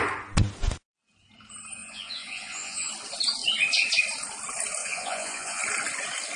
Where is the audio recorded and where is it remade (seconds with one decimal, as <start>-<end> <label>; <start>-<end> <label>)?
0.0-1.8 recorded; 1.8-2.9 remade; 2.9-4.8 recorded; 4.8-5.6 remade; 5.6-6.4 recorded

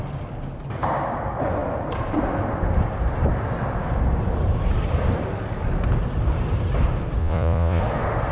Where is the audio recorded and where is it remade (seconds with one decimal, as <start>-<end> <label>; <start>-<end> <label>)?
0.0-7.2 recorded; 7.2-7.8 remade; 7.8-8.3 recorded

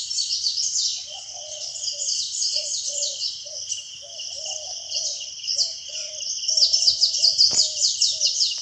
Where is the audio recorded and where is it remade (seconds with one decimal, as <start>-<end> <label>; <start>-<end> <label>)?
0.0-0.9 recorded; 0.9-3.5 remade; 3.5-5.0 recorded; 5.0-6.1 remade; 6.1-8.6 recorded